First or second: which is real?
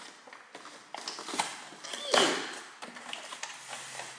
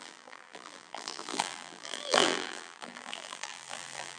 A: first